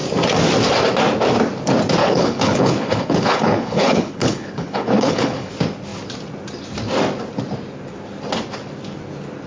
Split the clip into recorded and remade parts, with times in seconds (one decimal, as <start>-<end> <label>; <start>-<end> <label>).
0.0-2.0 recorded; 2.0-5.5 remade; 5.5-9.5 recorded